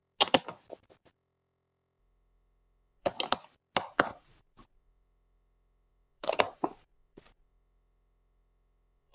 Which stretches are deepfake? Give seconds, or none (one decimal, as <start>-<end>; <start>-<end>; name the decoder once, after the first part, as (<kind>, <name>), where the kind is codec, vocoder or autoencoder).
2.0-3.1 (vocoder, Vocos); 3.9-9.1